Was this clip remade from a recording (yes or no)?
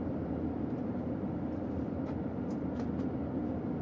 no